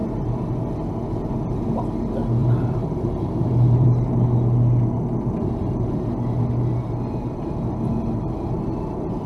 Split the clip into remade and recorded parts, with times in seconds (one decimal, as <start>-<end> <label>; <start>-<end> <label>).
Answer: 0.0-2.4 recorded; 2.4-4.1 remade; 4.1-9.3 recorded